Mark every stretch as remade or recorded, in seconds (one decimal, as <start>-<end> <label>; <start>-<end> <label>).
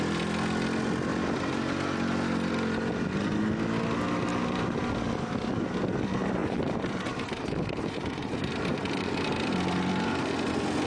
0.0-4.3 recorded; 4.3-4.9 remade; 4.9-6.4 recorded; 6.4-9.9 remade; 9.9-10.9 recorded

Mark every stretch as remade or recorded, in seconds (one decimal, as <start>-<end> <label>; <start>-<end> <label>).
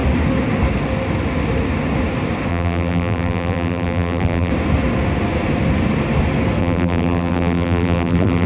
0.0-2.5 recorded; 2.5-4.5 remade; 4.5-6.6 recorded; 6.6-8.5 remade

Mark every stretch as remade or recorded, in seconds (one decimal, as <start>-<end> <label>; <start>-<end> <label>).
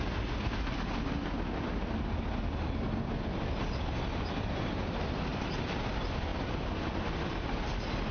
0.0-5.3 recorded; 5.3-5.8 remade; 5.8-8.1 recorded